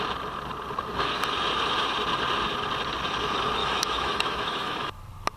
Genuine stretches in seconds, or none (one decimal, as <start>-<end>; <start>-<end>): 0.0-3.6; 4.9-5.4